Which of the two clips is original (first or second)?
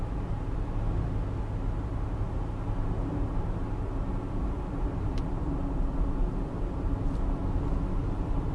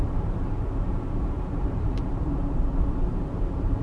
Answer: first